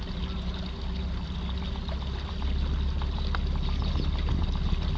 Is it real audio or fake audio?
real